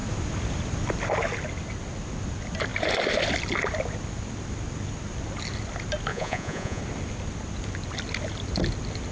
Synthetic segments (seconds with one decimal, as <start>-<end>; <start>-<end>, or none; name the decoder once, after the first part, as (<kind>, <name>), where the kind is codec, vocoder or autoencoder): 6.1-6.8 (vocoder, Vocos)